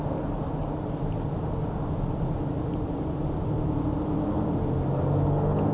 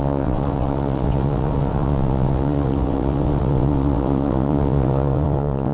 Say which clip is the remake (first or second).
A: second